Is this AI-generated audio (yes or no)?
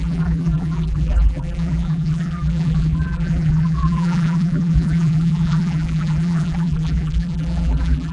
yes